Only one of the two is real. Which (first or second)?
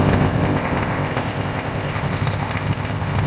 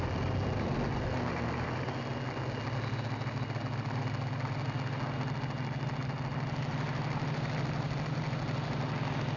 second